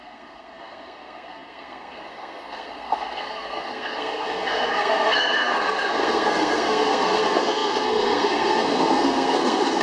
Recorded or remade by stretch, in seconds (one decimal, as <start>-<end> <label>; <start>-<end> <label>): 0.0-9.8 remade